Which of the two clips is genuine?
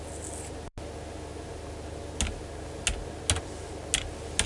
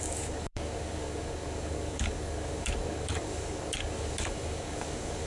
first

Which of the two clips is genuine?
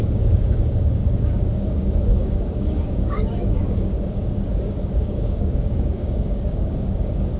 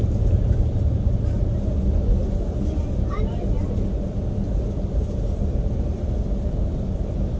second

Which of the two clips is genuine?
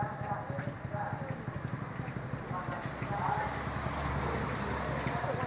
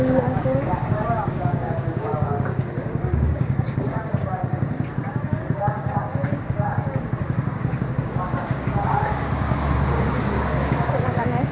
first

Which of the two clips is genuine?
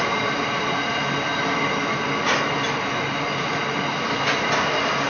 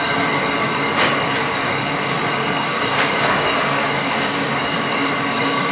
first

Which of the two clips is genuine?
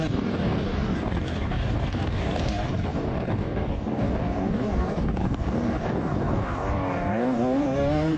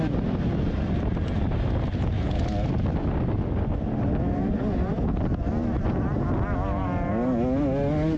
second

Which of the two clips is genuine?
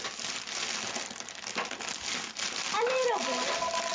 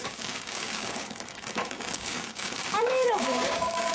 first